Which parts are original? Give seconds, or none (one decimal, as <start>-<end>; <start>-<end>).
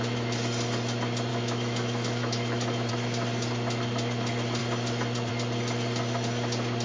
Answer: 0.0-1.3; 2.9-6.8